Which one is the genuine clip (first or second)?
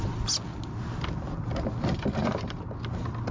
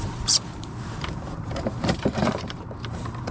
first